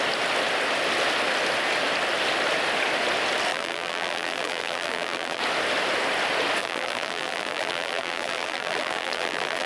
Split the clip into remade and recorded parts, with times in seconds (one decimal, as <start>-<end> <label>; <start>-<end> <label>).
0.0-3.5 recorded; 3.5-5.4 remade; 5.4-6.6 recorded; 6.6-9.7 remade